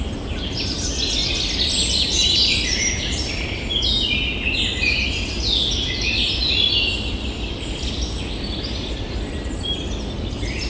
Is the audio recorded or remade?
recorded